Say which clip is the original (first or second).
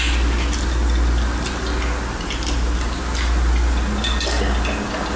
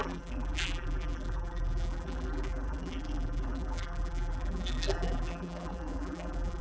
first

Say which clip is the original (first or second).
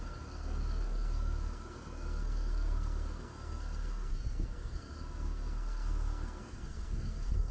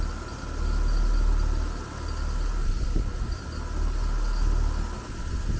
second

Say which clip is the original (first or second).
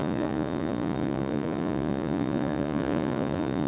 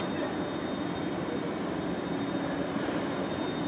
second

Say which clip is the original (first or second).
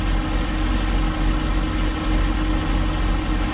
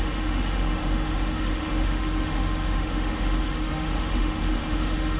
first